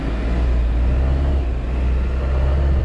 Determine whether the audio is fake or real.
real